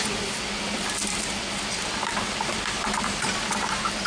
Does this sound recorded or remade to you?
recorded